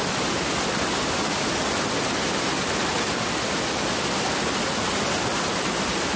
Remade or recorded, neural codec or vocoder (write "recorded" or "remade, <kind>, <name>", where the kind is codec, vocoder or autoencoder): recorded